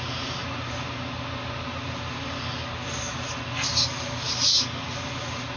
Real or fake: real